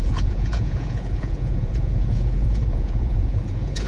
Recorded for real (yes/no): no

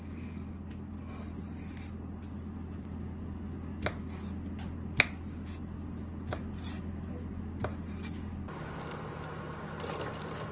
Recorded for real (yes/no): yes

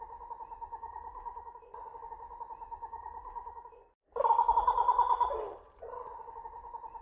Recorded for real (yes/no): yes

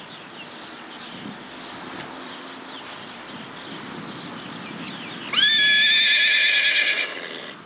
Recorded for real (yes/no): yes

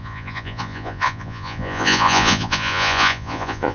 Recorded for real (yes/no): no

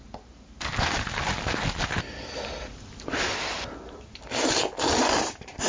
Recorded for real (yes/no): yes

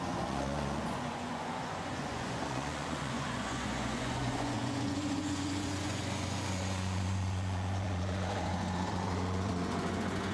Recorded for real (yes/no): no